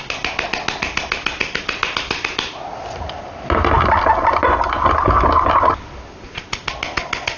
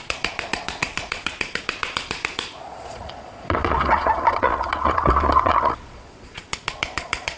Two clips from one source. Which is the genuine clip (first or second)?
first